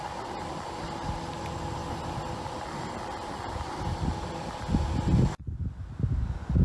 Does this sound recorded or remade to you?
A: recorded